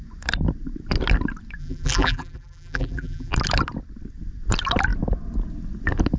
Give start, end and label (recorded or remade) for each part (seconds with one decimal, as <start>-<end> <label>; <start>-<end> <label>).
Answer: 0.0-1.6 recorded; 1.6-3.3 remade; 3.3-6.2 recorded